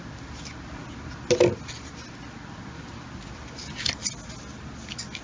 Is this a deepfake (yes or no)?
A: no